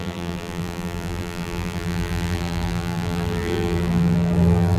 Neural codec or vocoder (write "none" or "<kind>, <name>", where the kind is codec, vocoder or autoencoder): vocoder, BigVGAN v2